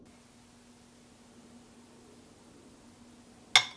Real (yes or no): yes